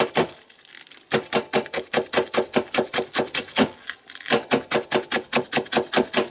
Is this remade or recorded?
recorded